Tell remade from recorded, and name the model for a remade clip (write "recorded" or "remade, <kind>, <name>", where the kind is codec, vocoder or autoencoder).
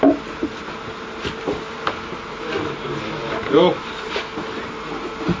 recorded